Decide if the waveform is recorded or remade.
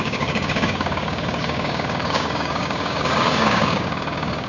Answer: remade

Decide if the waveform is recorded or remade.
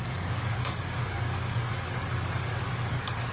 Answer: remade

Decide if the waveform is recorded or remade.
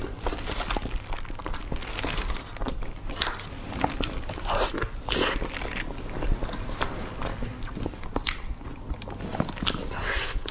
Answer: recorded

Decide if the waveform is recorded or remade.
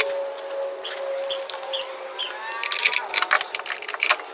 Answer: recorded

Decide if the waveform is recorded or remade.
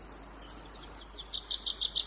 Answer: recorded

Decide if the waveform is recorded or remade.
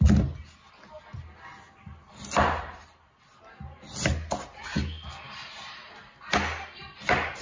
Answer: recorded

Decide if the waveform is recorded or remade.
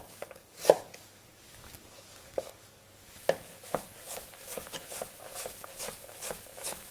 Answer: remade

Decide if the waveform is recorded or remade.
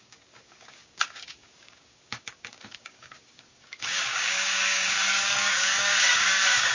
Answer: remade